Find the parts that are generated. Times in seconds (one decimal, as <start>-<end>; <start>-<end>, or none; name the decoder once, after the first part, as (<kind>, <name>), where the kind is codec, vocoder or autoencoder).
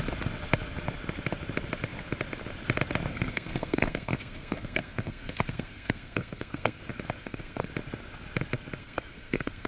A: 3.1-6.8 (codec, SNAC); 7.2-7.7; 8.8-9.7